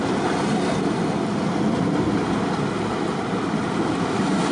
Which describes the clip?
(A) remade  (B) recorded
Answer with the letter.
B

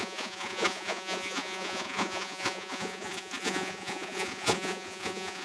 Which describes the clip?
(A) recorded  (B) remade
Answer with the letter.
B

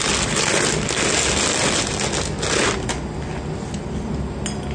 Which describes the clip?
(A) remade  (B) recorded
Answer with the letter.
B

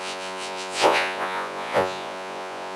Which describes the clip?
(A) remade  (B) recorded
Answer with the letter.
A